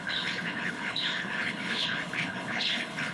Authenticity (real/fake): fake